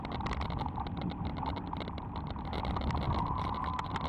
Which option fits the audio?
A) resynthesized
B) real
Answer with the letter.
B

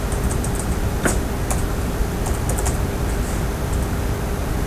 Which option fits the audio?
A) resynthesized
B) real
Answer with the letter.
B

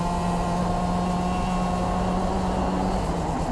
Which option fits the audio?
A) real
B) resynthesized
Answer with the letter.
A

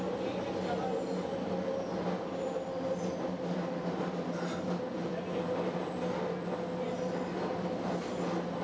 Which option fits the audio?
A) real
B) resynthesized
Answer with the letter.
A